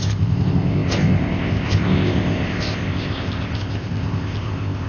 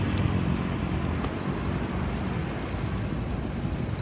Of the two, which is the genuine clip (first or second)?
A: second